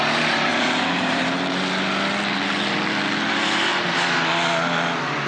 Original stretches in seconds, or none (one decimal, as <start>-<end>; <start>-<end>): 0.0-0.5; 1.7-3.7; 4.2-5.3